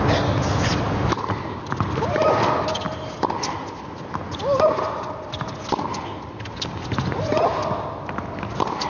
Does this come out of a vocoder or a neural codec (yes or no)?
no